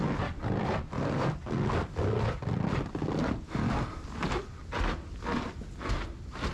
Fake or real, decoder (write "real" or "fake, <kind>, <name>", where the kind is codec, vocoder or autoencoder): real